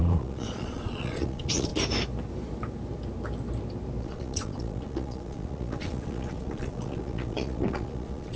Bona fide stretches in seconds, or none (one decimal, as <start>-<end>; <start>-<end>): 1.7-4.0